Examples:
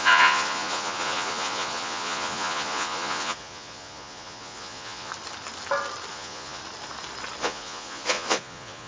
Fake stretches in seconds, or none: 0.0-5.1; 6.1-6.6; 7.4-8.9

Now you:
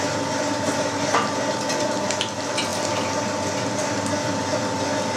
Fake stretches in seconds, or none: none

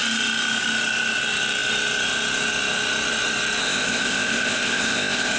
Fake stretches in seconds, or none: 3.6-5.4